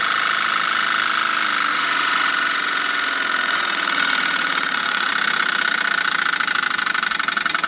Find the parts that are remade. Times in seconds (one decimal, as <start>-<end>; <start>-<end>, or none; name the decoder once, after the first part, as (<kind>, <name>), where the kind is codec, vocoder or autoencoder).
1.7-5.1 (vocoder, Vocos)